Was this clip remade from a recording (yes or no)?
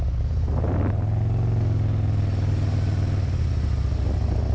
no